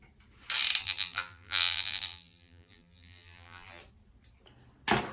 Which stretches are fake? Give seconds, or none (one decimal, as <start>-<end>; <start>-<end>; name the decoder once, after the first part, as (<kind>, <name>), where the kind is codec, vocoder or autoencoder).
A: 0.8-3.8 (vocoder, BigVGAN v2)